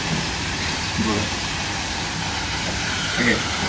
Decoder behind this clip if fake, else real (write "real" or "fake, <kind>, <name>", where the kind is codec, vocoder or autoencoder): fake, vocoder, BigVGAN v2